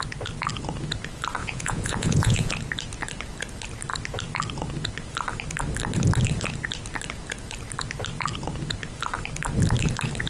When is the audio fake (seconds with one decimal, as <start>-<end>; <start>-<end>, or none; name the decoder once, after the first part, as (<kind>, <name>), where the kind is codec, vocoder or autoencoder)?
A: 1.4-2.5 (vocoder, Vocos)